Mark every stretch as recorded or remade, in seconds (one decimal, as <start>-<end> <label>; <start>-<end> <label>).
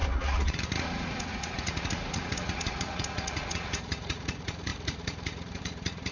0.0-6.1 remade